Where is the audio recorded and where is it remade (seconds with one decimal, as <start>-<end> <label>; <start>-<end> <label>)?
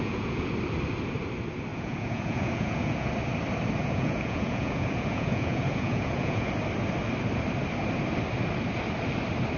0.0-0.5 remade; 0.5-1.7 recorded; 1.7-3.1 remade; 3.1-3.8 recorded; 3.8-6.5 remade; 6.5-9.6 recorded